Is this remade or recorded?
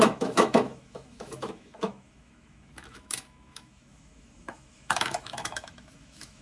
remade